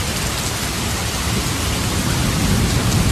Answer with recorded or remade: recorded